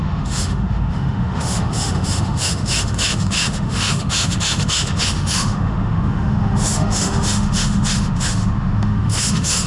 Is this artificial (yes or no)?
yes